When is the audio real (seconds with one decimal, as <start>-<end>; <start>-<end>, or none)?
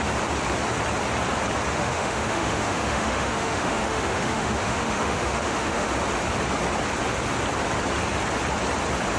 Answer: 0.0-1.7; 5.9-9.2